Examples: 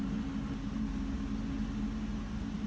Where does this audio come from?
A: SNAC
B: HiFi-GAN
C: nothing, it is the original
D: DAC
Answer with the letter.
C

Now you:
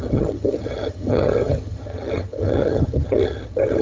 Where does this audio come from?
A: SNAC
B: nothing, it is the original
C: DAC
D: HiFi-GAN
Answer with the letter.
D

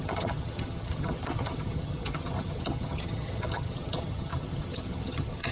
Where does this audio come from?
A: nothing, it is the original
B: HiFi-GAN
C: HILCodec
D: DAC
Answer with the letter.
B